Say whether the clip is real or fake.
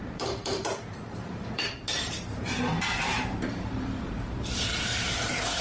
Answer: fake